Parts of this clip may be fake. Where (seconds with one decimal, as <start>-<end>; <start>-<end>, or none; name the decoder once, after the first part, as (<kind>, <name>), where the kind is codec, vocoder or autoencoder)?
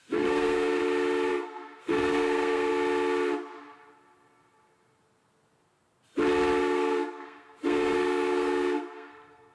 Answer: 0.0-0.8 (codec, SNAC); 1.3-2.7; 6.6-9.5